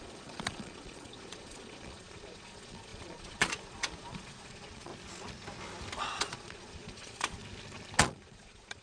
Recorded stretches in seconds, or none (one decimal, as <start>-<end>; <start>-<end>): 4.9-6.0; 7.4-8.0